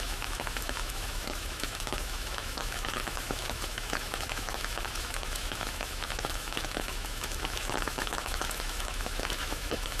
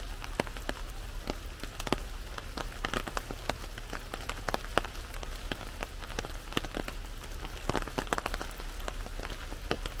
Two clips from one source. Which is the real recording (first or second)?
second